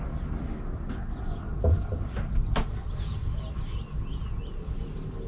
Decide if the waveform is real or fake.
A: real